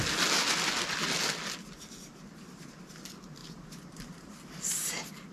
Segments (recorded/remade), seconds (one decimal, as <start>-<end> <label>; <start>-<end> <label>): 0.0-3.4 recorded; 3.4-4.3 remade; 4.3-5.3 recorded